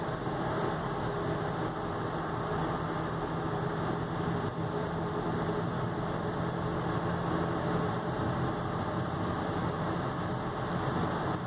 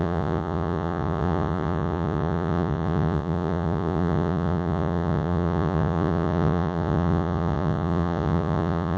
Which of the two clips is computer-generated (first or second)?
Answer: second